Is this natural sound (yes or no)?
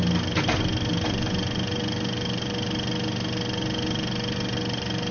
yes